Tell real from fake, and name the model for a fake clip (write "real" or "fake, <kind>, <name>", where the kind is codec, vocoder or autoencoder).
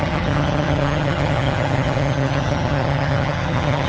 fake, vocoder, HiFi-GAN